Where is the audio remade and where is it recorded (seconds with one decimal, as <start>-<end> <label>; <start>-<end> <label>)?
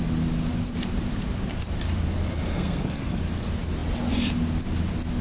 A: 0.0-2.5 recorded; 2.5-3.2 remade; 3.2-5.2 recorded